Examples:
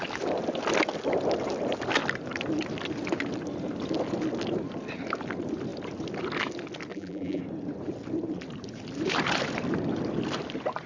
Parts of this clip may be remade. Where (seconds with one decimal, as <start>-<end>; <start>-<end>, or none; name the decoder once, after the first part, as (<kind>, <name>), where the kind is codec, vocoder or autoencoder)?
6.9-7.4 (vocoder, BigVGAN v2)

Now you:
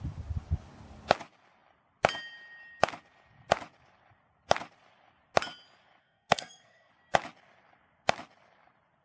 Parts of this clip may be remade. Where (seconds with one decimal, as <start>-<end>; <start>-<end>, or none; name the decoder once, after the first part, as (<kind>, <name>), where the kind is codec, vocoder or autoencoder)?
6.0-6.9 (codec, SNAC)

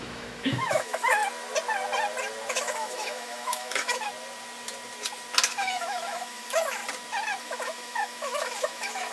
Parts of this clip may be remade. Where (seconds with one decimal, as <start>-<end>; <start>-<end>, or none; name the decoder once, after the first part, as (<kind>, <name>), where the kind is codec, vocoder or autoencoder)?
0.0-1.2 (autoencoder, DAC-VAE); 2.5-4.1; 5.5-6.8; 7.4-9.1